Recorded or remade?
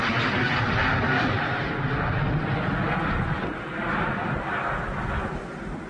recorded